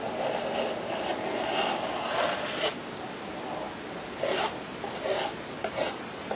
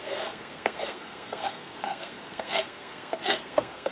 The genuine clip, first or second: first